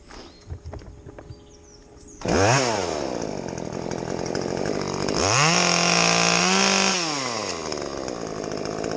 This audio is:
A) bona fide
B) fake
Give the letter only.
A